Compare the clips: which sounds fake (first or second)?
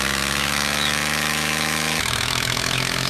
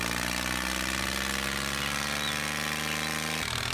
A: first